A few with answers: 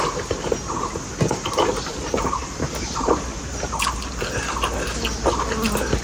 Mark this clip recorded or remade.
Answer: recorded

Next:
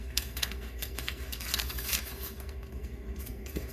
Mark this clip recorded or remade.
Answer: remade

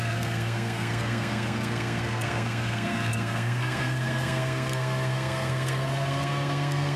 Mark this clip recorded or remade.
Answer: remade